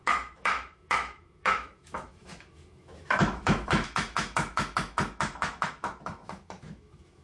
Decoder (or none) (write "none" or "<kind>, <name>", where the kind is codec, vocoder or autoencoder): autoencoder, DAC-VAE